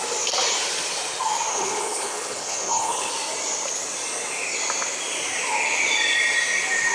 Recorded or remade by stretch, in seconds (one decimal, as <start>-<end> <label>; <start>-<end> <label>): 0.0-1.5 recorded; 1.5-3.1 remade; 3.1-6.9 recorded